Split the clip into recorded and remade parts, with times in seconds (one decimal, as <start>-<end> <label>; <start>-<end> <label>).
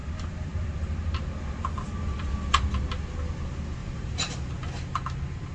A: 0.0-3.8 recorded; 3.8-4.5 remade; 4.5-5.5 recorded